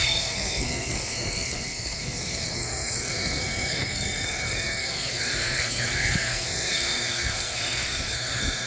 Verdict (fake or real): fake